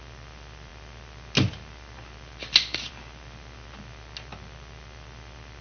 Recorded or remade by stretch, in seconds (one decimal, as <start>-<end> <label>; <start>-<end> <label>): 0.0-5.6 recorded